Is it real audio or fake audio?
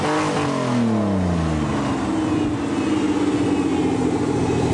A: real